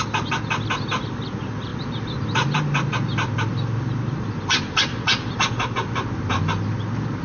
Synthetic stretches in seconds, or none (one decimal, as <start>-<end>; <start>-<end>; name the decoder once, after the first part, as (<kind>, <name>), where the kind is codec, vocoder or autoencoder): none

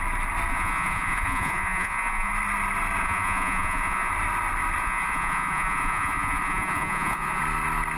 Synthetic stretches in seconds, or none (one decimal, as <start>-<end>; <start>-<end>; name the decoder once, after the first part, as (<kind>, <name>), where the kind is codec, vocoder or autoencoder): 0.5-2.3 (vocoder, Vocos); 3.0-4.1; 4.8-7.4